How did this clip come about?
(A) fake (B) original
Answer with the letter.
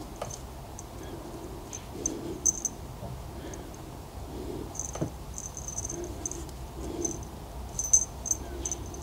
B